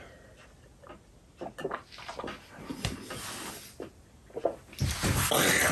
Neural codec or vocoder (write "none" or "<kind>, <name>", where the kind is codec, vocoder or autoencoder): none